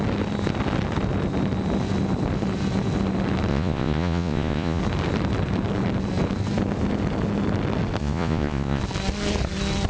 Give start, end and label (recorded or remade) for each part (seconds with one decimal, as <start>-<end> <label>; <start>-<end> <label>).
0.0-3.5 recorded; 3.5-4.8 remade; 4.8-8.0 recorded; 8.0-8.8 remade; 8.8-9.9 recorded